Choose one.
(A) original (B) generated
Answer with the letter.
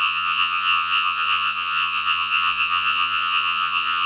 B